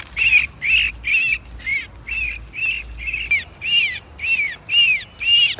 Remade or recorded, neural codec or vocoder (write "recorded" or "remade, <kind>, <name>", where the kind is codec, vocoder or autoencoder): recorded